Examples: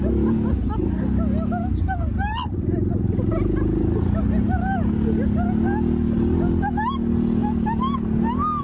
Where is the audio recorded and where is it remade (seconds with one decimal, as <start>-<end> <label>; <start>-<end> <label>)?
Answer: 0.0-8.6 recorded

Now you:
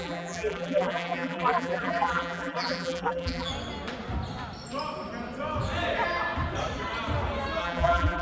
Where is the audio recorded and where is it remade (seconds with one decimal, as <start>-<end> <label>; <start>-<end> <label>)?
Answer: 0.0-3.5 remade; 3.5-7.6 recorded; 7.6-8.2 remade

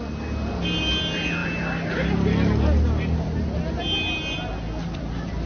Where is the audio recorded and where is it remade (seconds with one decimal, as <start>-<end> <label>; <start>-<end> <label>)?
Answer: 0.0-5.5 recorded